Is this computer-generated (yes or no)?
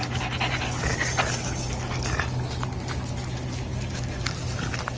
no